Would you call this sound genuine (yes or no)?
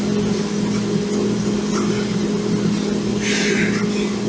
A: yes